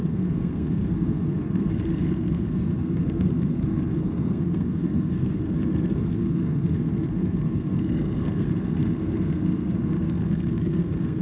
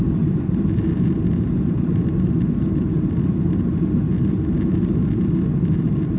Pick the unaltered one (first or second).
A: second